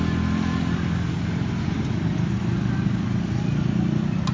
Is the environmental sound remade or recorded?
recorded